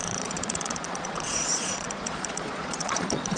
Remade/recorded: remade